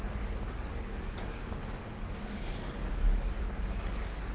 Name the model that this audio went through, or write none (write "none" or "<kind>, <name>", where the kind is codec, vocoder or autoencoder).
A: codec, DAC